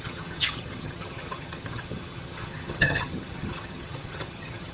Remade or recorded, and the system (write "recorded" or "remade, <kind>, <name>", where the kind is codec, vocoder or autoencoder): remade, vocoder, HiFi-GAN